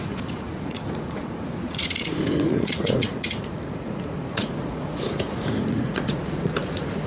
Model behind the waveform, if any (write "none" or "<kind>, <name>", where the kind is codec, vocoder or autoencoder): vocoder, Vocos